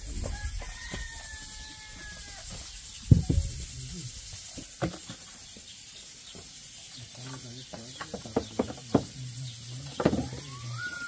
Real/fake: real